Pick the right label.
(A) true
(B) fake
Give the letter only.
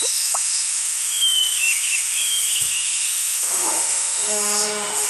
B